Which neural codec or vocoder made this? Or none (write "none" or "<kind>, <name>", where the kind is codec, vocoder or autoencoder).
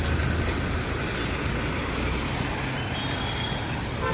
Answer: none